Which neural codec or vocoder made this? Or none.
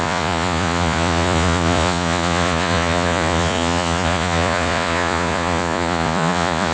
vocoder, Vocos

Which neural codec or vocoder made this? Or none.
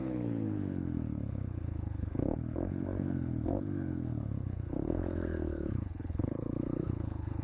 codec, HILCodec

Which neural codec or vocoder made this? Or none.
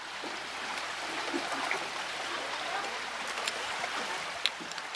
vocoder, BigVGAN v2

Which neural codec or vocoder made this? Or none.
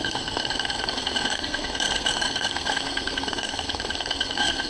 codec, SNAC